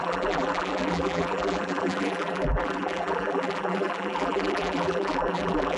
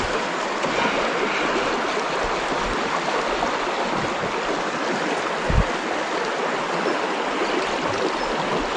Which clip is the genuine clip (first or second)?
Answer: second